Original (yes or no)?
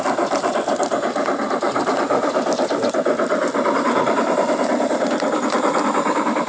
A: yes